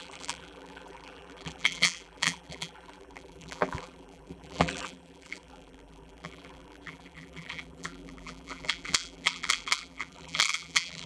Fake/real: fake